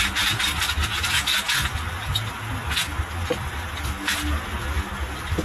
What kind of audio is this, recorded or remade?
recorded